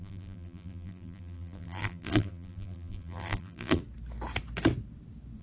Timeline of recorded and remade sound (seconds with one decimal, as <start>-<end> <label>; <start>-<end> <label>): 0.0-3.8 remade; 3.8-5.4 recorded

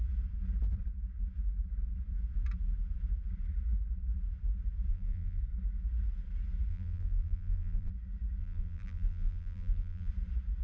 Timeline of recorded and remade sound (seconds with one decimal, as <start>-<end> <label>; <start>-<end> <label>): 0.0-4.9 recorded; 4.9-5.4 remade; 5.4-6.7 recorded; 6.7-7.9 remade; 7.9-8.4 recorded; 8.4-10.1 remade; 10.1-10.6 recorded

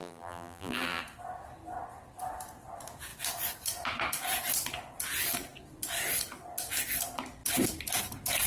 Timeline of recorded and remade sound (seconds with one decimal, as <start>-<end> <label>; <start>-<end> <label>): 0.0-1.0 remade; 1.0-8.5 recorded